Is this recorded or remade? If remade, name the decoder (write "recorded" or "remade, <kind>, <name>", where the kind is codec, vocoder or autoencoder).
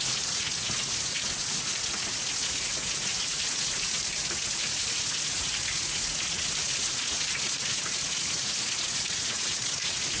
remade, vocoder, Vocos